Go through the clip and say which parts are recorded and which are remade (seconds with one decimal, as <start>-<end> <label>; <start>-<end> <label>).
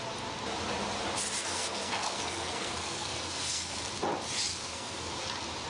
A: 0.0-1.4 recorded; 1.4-3.8 remade; 3.8-4.5 recorded; 4.5-5.1 remade; 5.1-5.7 recorded